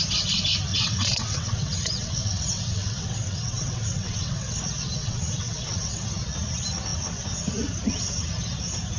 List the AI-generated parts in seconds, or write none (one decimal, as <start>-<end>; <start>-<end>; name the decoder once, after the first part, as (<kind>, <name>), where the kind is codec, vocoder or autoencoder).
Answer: 0.7-4.6 (vocoder, WaveNeXt); 5.0-6.1